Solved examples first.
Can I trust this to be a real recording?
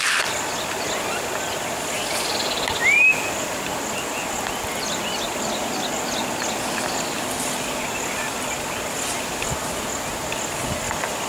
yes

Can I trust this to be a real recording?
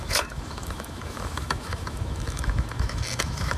no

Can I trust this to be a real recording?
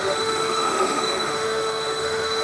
no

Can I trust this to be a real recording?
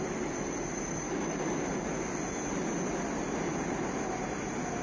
yes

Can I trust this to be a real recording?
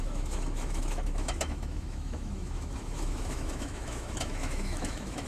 no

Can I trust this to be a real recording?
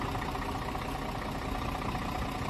yes